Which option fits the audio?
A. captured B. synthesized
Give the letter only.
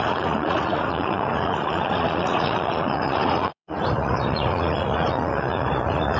B